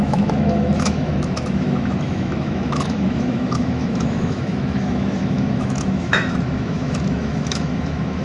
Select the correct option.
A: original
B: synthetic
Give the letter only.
B